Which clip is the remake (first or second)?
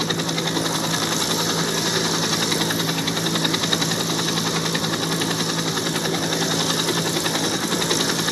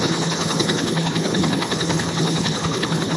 second